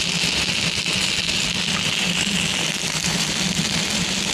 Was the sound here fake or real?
real